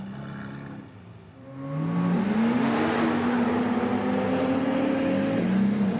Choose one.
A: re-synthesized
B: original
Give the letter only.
B